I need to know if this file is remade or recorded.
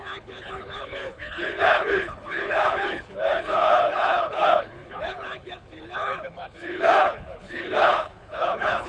remade